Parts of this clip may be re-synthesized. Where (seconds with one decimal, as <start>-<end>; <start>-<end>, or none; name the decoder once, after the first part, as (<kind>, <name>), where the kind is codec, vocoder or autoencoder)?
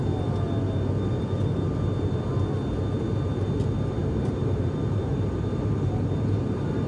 4.0-6.9 (vocoder, BigVGAN v2)